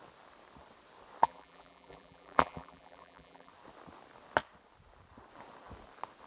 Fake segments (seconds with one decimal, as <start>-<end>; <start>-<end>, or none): 1.2-3.5